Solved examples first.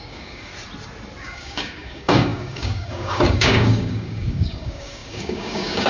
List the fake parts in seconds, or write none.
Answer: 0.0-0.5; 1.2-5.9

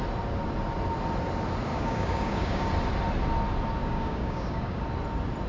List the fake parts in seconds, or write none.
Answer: 1.7-2.7; 3.8-4.8

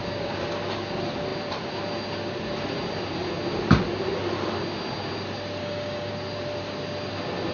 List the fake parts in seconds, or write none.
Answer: 5.6-6.1

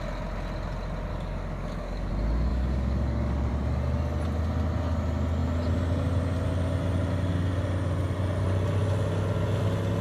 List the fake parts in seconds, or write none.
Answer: 1.1-2.1; 2.5-3.5

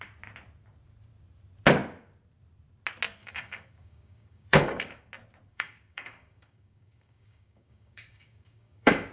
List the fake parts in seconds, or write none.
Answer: 3.2-5.1; 5.5-9.1

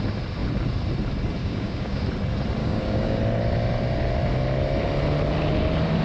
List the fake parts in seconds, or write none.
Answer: 1.4-2.0; 2.6-3.2

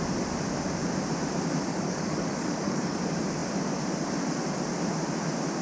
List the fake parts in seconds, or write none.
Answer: 1.7-3.0

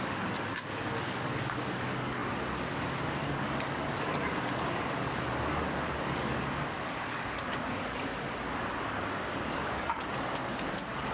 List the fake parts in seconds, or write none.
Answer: 0.0-8.1; 8.7-11.1